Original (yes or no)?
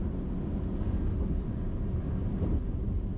yes